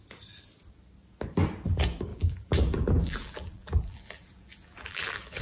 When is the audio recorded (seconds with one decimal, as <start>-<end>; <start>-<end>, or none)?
0.0-2.1